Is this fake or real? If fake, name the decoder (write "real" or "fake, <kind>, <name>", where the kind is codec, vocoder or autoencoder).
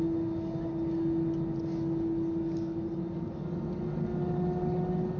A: real